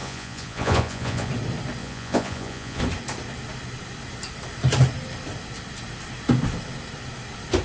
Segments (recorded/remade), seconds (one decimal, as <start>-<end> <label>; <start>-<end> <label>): 0.0-1.3 remade; 1.3-1.8 recorded; 1.8-2.8 remade; 2.8-7.6 recorded